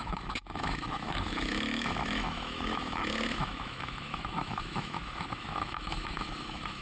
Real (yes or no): no